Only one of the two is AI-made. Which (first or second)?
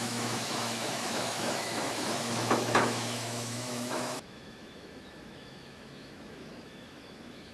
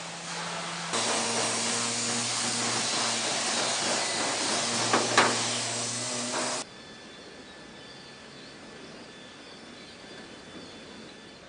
first